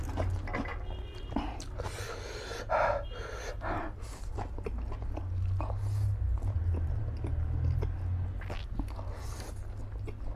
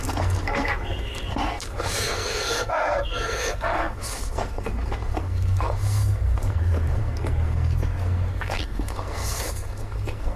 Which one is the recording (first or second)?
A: first